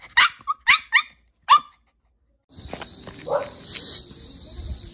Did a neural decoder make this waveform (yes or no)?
no